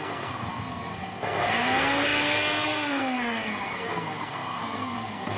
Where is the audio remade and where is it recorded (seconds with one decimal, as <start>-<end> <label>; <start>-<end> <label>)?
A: 0.0-5.4 remade